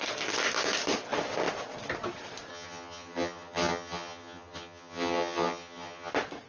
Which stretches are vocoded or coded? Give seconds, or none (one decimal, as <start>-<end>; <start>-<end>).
2.5-6.1

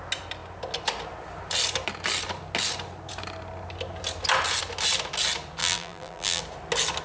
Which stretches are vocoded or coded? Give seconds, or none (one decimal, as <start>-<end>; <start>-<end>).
5.6-6.4

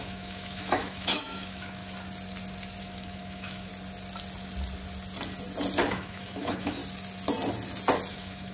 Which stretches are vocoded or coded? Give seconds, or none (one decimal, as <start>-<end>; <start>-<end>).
0.0-1.8; 2.8-3.7; 5.9-6.8; 8.1-8.5